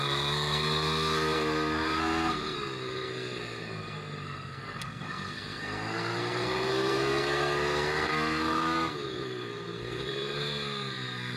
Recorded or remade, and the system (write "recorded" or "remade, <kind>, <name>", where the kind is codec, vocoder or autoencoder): remade, codec, SNAC